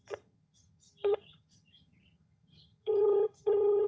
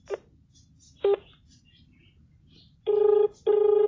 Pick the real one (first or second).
second